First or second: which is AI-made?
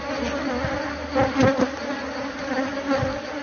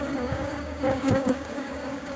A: second